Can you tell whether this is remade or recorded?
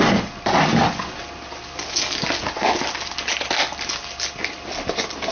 recorded